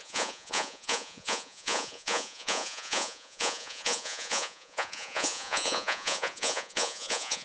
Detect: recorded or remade remade